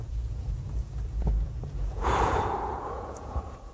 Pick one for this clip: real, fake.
fake